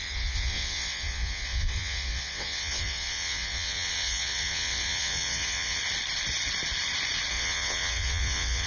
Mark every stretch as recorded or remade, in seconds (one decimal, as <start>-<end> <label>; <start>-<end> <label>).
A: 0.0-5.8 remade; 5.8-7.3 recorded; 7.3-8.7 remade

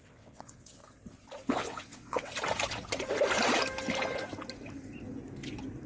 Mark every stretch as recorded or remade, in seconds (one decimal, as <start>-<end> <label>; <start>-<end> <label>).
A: 0.0-0.8 remade; 0.8-1.5 recorded; 1.5-2.3 remade; 2.3-5.9 recorded

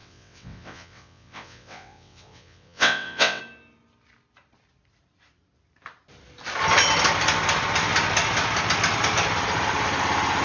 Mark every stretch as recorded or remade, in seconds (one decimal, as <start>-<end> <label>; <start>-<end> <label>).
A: 0.0-3.4 remade; 3.4-10.4 recorded

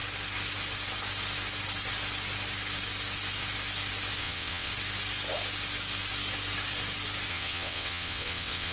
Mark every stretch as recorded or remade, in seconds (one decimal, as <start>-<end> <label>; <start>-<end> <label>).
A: 0.0-4.2 recorded; 4.2-4.7 remade; 4.7-7.3 recorded; 7.3-8.7 remade

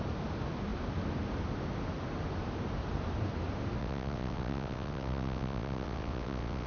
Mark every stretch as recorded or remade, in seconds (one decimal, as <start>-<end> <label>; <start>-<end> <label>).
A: 0.0-3.8 recorded; 3.8-6.7 remade